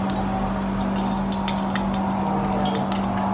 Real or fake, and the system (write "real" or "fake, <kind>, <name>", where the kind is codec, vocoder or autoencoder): real